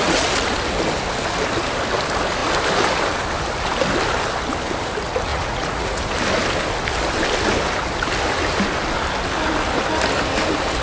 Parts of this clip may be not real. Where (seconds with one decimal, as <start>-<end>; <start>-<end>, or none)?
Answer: 5.3-6.0